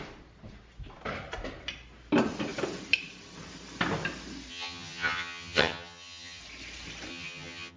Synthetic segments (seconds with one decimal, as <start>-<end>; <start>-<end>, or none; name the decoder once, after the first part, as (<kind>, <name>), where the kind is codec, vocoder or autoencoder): 4.5-6.4 (vocoder, HiFi-GAN); 7.1-7.8